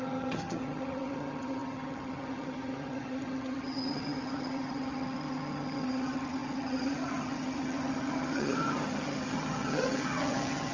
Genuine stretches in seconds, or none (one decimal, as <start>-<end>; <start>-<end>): none